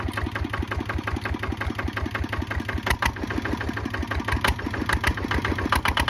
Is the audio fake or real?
real